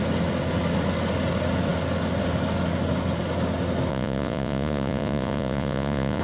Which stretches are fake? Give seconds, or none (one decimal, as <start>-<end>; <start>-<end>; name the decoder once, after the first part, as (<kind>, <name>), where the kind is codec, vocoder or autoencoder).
3.9-6.2 (vocoder, Vocos)